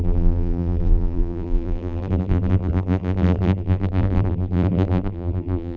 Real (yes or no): no